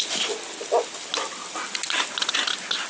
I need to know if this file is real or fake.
real